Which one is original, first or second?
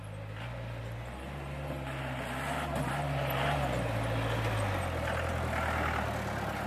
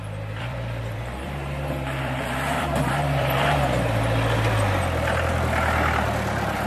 first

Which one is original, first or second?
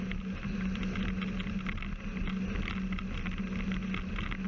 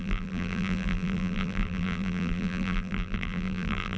first